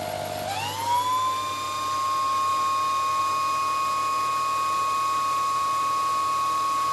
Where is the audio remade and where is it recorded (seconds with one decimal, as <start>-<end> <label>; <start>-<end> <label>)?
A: 0.0-6.9 recorded